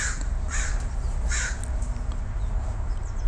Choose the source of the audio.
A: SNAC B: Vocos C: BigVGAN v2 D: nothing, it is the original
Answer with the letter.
D